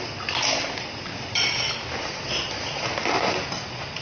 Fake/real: real